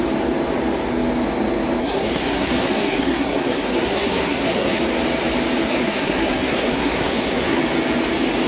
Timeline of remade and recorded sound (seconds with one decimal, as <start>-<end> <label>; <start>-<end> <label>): 0.0-1.8 recorded; 1.8-4.8 remade; 4.8-5.7 recorded; 5.7-7.6 remade; 7.6-8.5 recorded